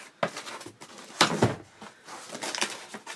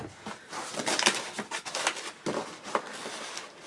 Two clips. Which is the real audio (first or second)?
first